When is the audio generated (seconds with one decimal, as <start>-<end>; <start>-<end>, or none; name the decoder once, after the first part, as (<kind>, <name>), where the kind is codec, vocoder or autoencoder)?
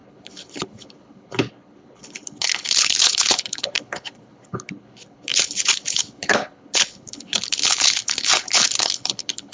0.0-9.5 (codec, HILCodec)